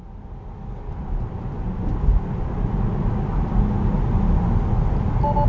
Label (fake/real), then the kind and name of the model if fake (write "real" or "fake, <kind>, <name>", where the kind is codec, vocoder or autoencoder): real